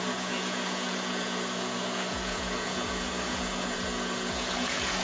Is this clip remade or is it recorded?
remade